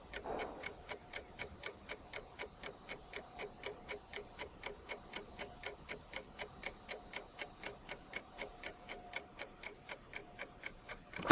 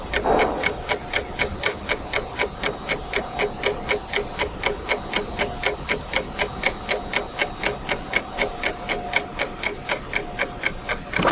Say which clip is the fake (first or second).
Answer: first